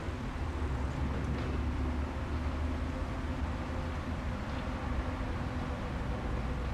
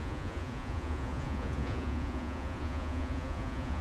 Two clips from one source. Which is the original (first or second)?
first